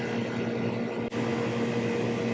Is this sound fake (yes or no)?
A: no